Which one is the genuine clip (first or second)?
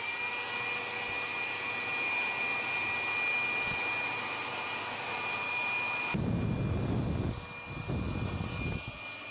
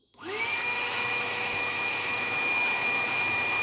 first